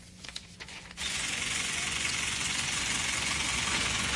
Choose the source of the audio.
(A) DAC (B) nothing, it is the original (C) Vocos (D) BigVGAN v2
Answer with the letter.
C